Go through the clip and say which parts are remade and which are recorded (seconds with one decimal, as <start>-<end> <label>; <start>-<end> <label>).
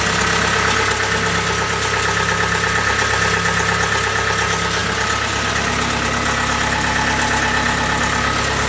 0.0-8.7 recorded